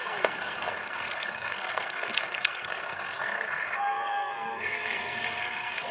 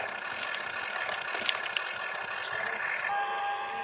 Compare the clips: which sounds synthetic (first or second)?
first